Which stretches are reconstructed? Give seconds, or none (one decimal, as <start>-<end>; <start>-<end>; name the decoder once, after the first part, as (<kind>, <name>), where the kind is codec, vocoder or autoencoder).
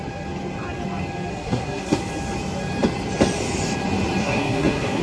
1.3-2.0 (codec, SNAC); 4.2-5.0